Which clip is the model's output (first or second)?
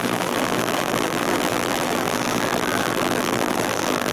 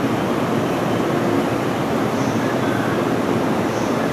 first